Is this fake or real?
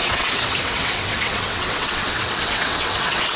fake